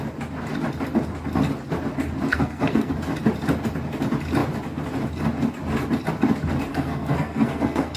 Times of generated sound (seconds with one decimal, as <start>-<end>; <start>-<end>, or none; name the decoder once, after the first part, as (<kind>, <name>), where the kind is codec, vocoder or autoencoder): 2.3-2.9 (codec, SNAC); 6.7-8.0